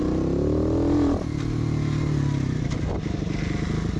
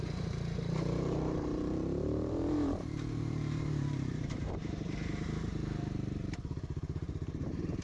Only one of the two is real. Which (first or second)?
first